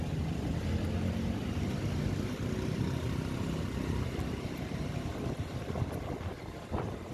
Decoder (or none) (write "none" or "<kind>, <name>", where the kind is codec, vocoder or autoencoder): none